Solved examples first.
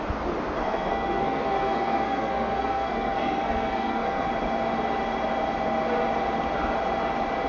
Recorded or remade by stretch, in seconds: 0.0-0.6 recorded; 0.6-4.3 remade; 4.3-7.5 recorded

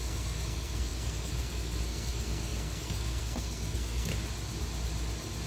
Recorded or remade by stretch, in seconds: 0.0-4.1 remade; 4.1-5.5 recorded

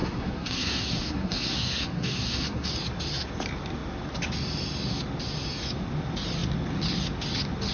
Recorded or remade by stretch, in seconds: 0.0-2.7 remade; 2.7-7.7 recorded

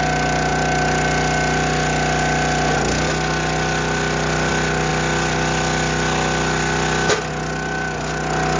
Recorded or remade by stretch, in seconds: 0.0-8.6 recorded

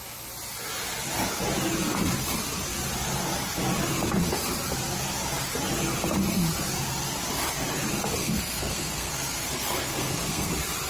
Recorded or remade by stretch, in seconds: 0.0-8.2 recorded; 8.2-10.5 remade; 10.5-10.9 recorded

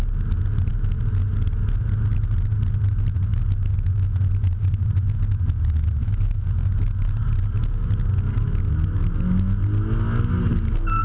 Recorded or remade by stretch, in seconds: 0.0-11.0 recorded